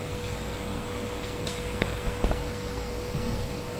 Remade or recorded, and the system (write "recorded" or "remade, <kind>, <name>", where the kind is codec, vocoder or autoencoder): remade, codec, SNAC